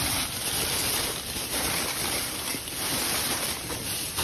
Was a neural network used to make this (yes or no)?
no